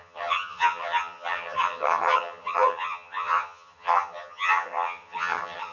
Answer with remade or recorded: remade